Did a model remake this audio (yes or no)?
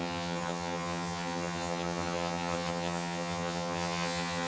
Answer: yes